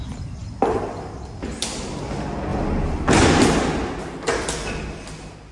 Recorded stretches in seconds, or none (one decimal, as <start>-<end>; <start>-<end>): 0.0-5.5